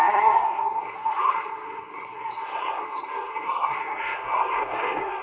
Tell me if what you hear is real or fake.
fake